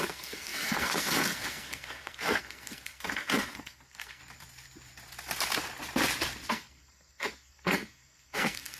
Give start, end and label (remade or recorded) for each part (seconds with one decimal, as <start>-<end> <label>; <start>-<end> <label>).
0.0-4.2 remade; 4.2-6.5 recorded; 6.5-8.8 remade